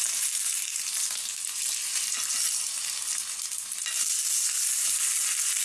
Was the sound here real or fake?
real